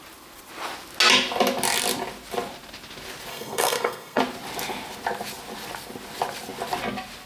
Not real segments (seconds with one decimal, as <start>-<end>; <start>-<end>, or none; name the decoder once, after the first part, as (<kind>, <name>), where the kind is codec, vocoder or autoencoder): 3.3-4.2 (codec, SNAC)